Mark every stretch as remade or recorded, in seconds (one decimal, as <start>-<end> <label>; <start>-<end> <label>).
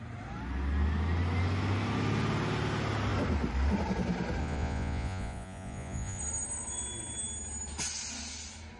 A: 0.0-4.4 recorded; 4.4-6.2 remade; 6.2-8.8 recorded